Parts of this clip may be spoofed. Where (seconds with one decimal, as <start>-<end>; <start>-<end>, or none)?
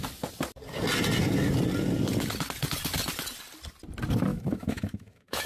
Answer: 4.3-5.5